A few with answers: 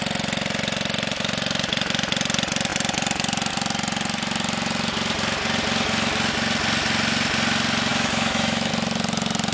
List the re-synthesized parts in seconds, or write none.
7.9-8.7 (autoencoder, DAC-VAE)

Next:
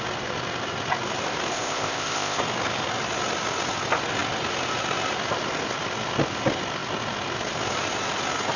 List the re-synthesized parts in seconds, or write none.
1.5-2.4 (codec, ZipCodec)

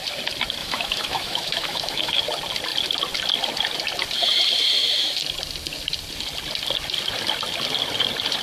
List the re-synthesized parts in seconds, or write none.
0.6-2.2 (autoencoder, DAC-VAE)

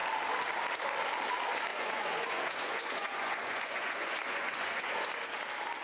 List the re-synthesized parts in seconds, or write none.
1.7-5.2 (vocoder, Vocos)

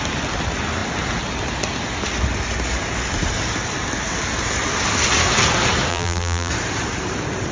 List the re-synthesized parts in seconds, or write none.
5.9-6.5 (vocoder, BigVGAN v2)

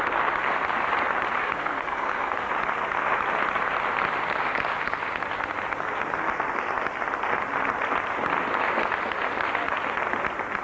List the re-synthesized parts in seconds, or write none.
1.4-2.5 (codec, SNAC)

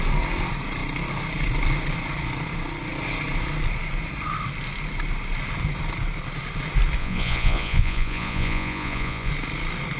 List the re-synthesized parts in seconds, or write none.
7.0-9.3 (vocoder, Vocos)

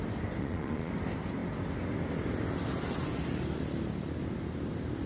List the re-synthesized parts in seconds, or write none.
0.4-0.9 (vocoder, Vocos)